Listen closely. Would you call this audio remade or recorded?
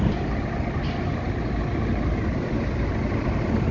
recorded